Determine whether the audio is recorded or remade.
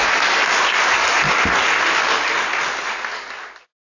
recorded